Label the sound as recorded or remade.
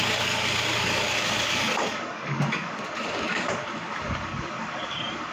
remade